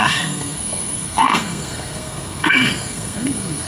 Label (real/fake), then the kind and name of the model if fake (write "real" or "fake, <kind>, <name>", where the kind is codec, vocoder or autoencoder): fake, codec, SNAC